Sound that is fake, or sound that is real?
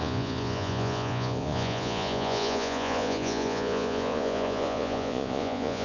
fake